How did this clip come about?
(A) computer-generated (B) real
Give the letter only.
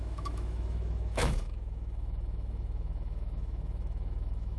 A